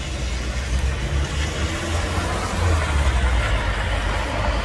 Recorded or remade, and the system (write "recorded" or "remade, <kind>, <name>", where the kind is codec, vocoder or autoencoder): recorded